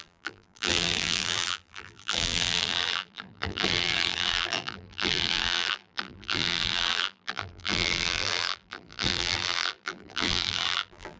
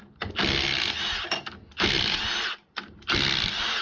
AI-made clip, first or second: first